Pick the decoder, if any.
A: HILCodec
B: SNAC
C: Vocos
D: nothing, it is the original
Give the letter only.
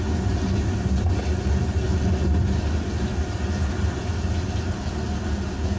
D